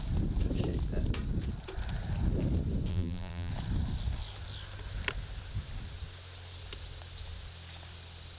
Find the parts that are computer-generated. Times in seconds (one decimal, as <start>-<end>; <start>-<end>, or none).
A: 2.9-3.5